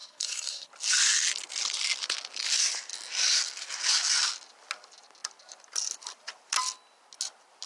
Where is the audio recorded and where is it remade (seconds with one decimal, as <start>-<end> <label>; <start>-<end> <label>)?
0.0-0.7 remade; 0.7-7.7 recorded